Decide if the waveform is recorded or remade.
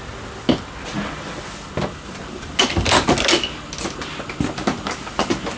recorded